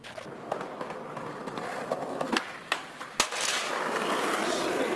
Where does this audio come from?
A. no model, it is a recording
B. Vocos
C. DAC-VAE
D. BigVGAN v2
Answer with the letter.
A